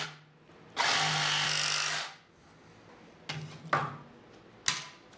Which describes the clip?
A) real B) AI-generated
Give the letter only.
A